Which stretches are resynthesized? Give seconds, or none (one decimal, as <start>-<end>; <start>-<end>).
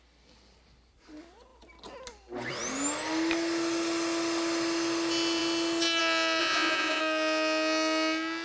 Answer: 6.4-7.0